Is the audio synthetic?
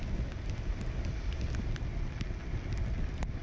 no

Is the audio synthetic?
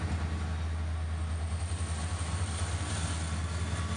no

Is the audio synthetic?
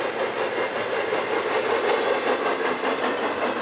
no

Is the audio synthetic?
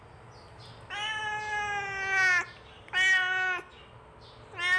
no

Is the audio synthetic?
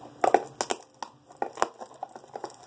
no